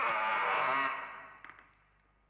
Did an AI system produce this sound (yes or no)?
no